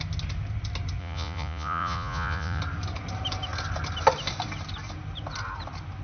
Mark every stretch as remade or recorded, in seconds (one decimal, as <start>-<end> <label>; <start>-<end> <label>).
0.0-1.0 recorded; 1.0-2.6 remade; 2.6-6.0 recorded